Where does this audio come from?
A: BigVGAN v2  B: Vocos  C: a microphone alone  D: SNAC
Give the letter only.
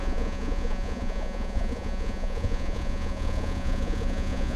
B